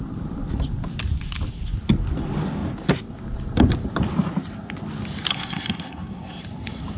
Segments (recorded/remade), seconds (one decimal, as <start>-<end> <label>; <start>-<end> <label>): 0.0-5.3 recorded; 5.3-6.4 remade; 6.4-7.0 recorded